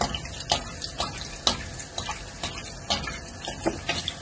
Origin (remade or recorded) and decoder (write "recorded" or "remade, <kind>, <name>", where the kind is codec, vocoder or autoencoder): recorded